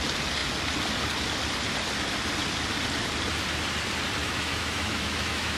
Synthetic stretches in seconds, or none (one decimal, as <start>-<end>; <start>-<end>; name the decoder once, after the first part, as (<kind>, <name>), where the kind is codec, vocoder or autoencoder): 4.2-5.6 (autoencoder, DAC-VAE)